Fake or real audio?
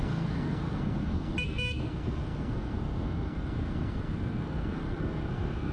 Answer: fake